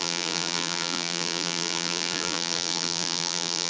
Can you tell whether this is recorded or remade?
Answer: remade